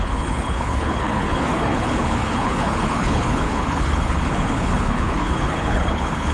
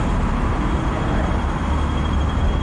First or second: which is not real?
first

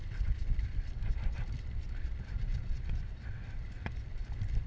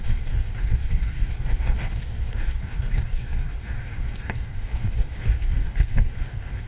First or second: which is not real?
second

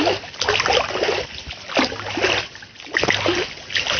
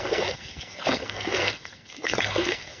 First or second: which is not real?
second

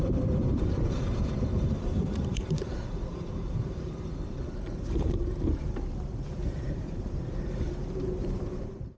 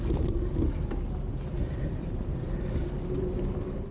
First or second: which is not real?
first